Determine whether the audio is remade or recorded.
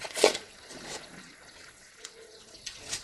remade